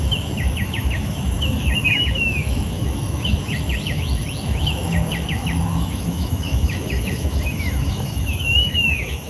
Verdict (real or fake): fake